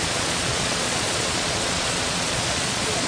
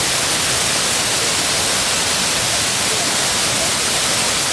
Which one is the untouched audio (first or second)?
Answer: second